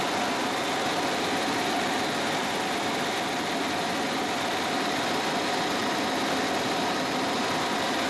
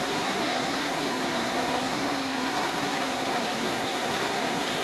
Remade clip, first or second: second